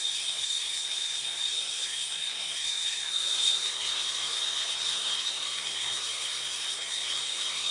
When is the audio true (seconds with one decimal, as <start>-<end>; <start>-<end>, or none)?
none